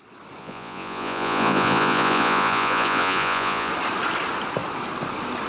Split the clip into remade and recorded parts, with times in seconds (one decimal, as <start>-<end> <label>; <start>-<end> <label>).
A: 0.0-0.4 recorded; 0.4-3.7 remade; 3.7-5.5 recorded